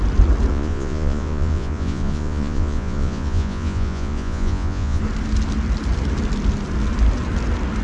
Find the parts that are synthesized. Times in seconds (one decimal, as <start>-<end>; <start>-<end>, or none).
0.5-5.0